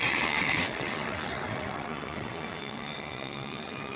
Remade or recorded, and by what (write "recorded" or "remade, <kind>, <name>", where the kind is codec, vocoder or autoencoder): remade, vocoder, WaveNeXt